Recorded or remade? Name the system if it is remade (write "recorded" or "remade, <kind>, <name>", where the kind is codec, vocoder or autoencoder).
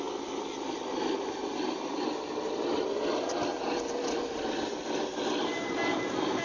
recorded